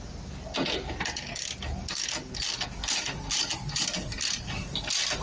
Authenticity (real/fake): real